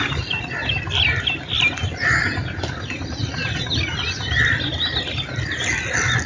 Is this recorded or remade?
recorded